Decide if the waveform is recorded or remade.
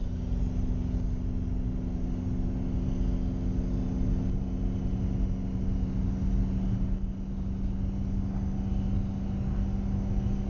recorded